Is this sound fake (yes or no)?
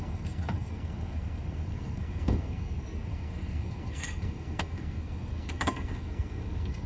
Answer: yes